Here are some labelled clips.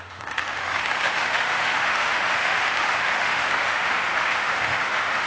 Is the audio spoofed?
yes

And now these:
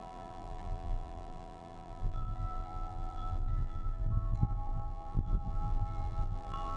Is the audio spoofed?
yes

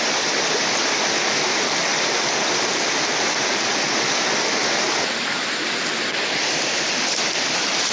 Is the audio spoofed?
no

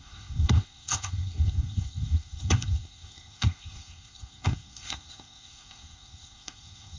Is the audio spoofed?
yes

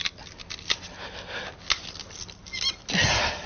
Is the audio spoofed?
no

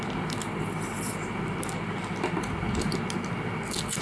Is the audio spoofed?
no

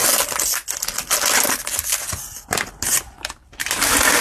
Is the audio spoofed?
no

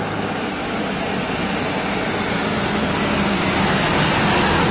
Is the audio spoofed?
no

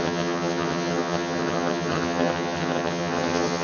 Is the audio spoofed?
yes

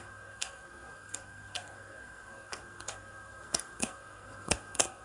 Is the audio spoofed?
yes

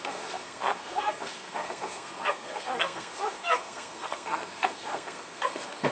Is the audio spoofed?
yes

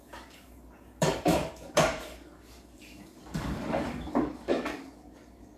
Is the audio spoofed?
yes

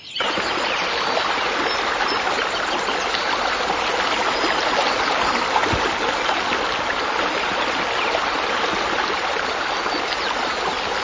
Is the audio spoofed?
no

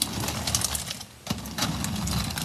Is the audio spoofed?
no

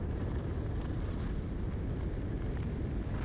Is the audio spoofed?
no